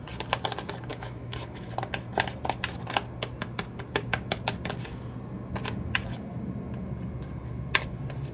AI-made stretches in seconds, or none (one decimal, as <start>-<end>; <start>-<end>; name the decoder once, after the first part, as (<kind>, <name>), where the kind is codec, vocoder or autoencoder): 0.9-1.7 (autoencoder, DAC-VAE)